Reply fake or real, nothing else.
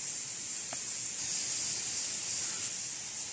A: real